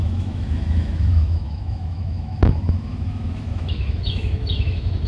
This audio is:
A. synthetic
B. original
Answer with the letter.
A